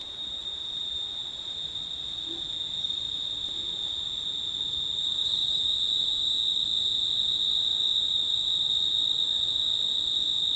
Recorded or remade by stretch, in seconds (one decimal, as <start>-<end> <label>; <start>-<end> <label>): 0.0-2.0 remade; 2.0-5.2 recorded; 5.2-6.1 remade; 6.1-10.6 recorded